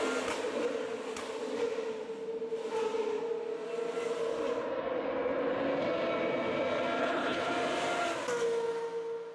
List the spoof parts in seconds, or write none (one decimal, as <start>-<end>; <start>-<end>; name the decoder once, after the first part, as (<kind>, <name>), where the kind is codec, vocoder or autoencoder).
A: 7.0-7.5 (codec, HILCodec)